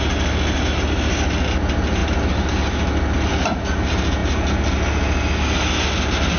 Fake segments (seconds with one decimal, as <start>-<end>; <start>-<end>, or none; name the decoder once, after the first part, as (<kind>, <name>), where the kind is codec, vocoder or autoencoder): none